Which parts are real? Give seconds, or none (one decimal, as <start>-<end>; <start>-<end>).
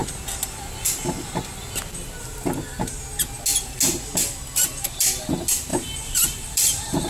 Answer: 0.0-5.7